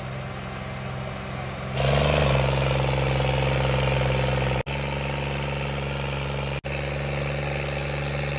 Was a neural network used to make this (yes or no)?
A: no